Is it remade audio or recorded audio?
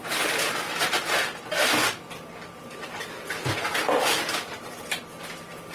recorded